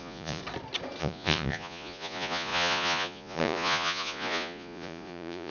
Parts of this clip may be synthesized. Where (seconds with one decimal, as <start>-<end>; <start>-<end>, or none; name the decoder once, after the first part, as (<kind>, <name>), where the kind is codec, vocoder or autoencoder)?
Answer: 0.0-0.4 (vocoder, Vocos); 1.0-5.5